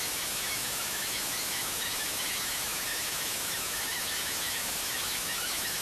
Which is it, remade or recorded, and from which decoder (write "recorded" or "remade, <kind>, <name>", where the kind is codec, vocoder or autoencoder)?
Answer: remade, autoencoder, DAC-VAE